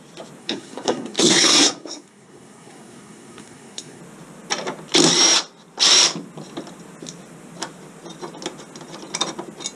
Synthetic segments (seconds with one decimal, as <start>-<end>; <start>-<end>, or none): 0.4-4.0